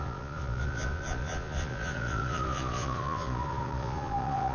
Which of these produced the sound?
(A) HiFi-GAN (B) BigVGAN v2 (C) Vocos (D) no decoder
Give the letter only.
C